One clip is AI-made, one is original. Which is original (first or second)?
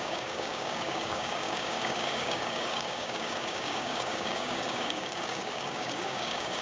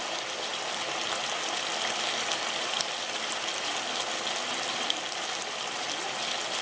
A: second